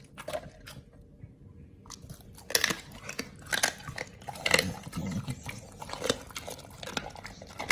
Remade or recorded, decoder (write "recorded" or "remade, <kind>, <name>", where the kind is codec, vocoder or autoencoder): recorded